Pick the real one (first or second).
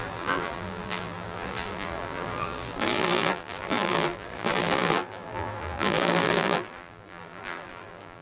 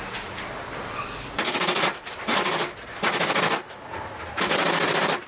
second